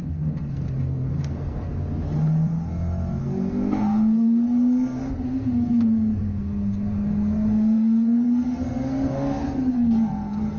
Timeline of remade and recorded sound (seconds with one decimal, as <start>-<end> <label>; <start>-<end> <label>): 0.0-1.7 remade; 1.7-3.2 recorded; 3.2-10.6 remade